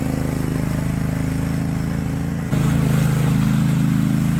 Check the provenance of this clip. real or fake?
real